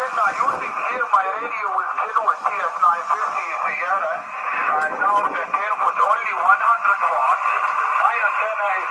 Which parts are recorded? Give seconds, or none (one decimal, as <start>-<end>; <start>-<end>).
0.0-8.9